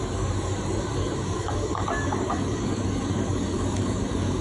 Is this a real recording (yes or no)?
no